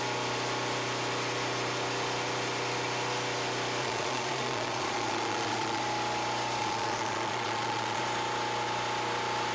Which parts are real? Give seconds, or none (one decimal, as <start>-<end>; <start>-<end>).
0.0-3.8; 5.8-6.6; 8.0-9.5